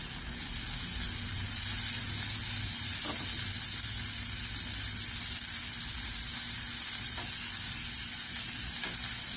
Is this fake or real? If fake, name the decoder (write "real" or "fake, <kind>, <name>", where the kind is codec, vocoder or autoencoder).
real